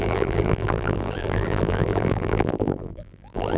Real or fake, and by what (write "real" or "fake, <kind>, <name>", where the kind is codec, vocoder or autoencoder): fake, vocoder, BigVGAN v2